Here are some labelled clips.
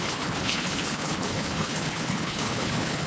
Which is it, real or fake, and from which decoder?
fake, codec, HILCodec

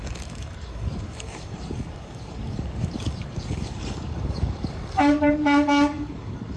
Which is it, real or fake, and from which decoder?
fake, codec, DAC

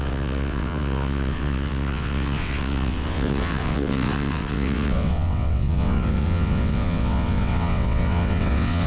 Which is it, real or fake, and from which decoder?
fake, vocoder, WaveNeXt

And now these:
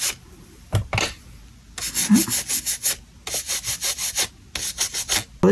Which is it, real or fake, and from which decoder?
real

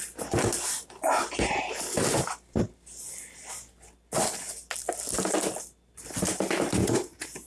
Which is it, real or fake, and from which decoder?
real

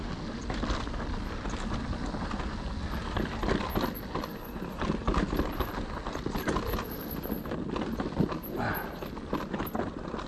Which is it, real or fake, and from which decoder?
real